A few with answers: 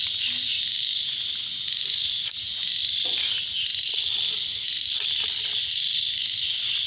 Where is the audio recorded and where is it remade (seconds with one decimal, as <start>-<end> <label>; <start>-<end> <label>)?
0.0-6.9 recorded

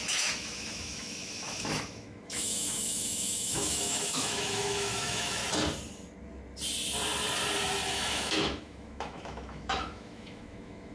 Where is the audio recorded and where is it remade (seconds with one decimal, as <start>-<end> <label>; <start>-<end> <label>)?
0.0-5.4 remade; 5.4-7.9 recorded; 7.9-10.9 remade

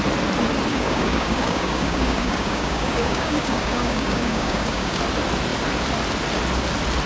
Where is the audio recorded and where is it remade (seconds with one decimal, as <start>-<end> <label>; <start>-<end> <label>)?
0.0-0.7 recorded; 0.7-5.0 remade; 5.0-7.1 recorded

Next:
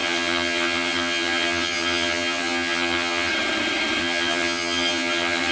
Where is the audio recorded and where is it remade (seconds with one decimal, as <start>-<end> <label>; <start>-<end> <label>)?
0.0-3.3 remade; 3.3-4.0 recorded; 4.0-5.5 remade